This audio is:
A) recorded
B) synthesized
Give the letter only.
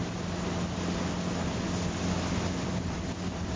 A